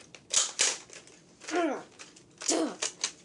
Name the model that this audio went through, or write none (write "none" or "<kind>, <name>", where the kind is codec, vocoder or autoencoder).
none